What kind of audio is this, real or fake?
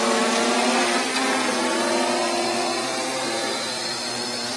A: real